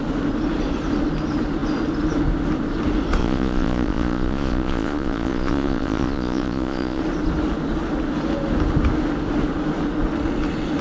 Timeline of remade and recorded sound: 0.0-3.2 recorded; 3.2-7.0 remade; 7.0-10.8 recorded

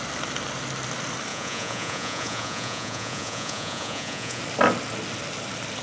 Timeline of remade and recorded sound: 0.0-1.3 recorded; 1.3-4.4 remade; 4.4-5.8 recorded

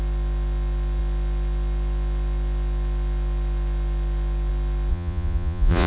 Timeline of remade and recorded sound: 0.0-4.9 recorded; 4.9-5.9 remade

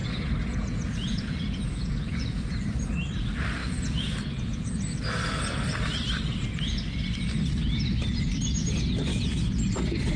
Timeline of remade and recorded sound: 0.0-2.5 remade; 2.5-3.6 recorded; 3.6-4.7 remade; 4.7-9.1 recorded; 9.1-9.6 remade; 9.6-10.2 recorded